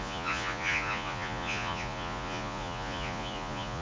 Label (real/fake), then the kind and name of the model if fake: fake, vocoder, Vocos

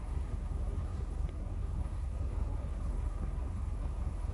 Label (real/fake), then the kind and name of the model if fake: fake, codec, SNAC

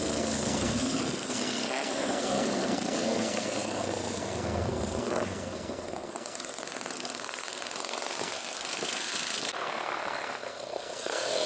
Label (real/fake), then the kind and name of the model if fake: fake, codec, SNAC